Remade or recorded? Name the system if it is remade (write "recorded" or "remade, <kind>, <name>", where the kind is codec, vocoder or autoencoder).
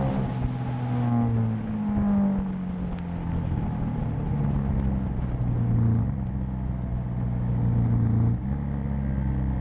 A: recorded